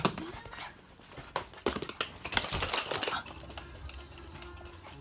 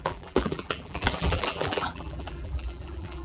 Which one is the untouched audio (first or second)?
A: first